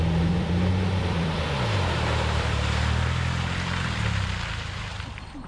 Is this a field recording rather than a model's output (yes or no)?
no